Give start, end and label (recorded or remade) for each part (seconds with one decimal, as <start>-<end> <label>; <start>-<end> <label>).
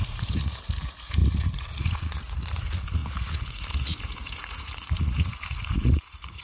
0.0-6.4 remade